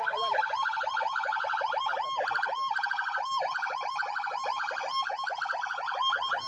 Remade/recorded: recorded